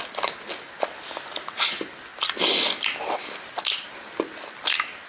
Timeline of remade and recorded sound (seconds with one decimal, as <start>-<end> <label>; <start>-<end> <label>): 0.0-5.1 recorded

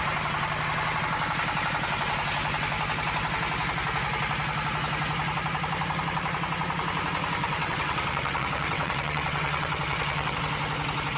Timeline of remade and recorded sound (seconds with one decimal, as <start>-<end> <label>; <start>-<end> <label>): 0.0-7.4 recorded; 7.4-10.4 remade; 10.4-11.2 recorded

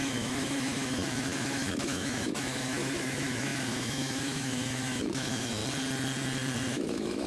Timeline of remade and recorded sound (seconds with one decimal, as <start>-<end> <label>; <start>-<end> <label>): 0.0-5.6 remade; 5.6-6.7 recorded; 6.7-7.3 remade

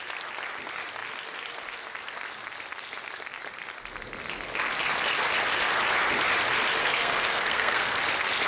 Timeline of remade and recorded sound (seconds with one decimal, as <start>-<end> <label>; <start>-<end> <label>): 0.0-6.8 recorded; 6.8-8.0 remade; 8.0-8.5 recorded

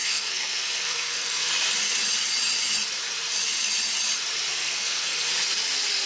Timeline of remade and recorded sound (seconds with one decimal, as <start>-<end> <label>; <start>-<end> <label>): 0.0-1.5 remade; 1.5-4.5 recorded; 4.5-5.3 remade; 5.3-6.1 recorded

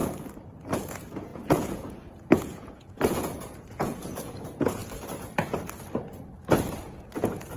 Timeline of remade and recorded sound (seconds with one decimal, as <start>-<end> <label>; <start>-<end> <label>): 0.0-0.6 recorded; 0.6-4.8 remade; 4.8-6.8 recorded; 6.8-7.6 remade

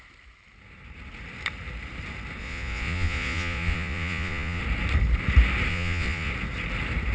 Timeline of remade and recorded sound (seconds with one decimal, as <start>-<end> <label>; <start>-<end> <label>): 0.0-2.4 recorded; 2.4-4.6 remade; 4.6-5.7 recorded; 5.7-6.3 remade; 6.3-7.1 recorded

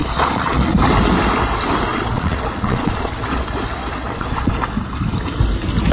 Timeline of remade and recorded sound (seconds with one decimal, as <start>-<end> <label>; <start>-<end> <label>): 0.0-0.8 remade; 0.8-1.9 recorded; 1.9-3.4 remade; 3.4-3.8 recorded; 3.8-4.5 remade; 4.5-5.9 recorded